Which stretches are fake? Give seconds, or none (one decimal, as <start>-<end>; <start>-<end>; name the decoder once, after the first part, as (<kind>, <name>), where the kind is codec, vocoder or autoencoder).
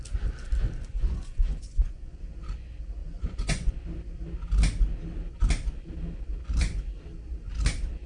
0.9-2.2 (vocoder, Vocos); 3.0-3.7